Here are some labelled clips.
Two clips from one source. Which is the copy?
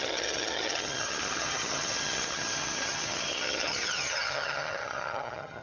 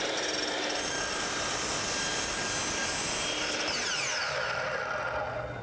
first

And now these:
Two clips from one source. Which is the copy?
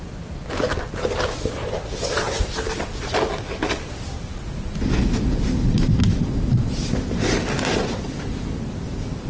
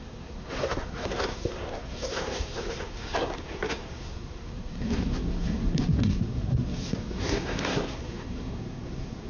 second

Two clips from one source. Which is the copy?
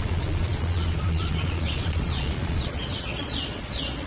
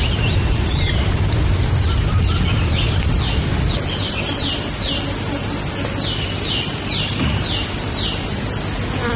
first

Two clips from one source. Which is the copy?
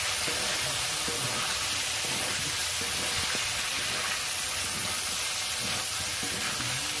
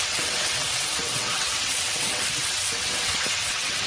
second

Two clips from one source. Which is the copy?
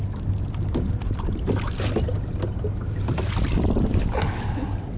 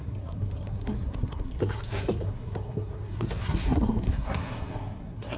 second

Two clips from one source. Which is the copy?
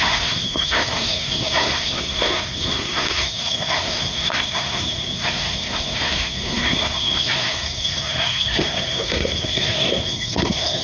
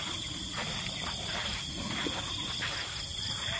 first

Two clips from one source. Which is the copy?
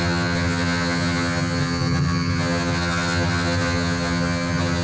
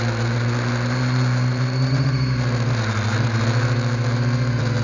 first